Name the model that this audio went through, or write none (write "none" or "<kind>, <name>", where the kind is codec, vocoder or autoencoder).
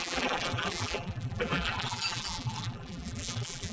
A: vocoder, BigVGAN v2